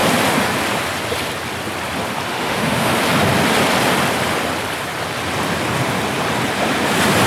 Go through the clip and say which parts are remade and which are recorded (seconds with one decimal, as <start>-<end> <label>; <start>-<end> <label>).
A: 0.0-2.3 recorded; 2.3-2.9 remade; 2.9-7.3 recorded